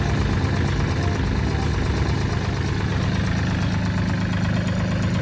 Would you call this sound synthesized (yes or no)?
no